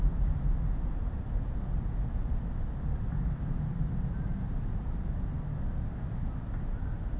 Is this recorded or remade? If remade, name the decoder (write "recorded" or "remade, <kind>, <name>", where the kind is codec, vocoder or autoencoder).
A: recorded